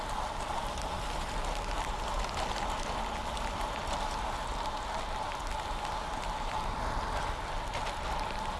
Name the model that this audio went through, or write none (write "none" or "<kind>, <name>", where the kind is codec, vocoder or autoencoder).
none